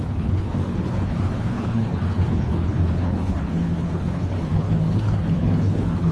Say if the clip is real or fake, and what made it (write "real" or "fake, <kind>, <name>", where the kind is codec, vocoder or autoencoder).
fake, codec, HILCodec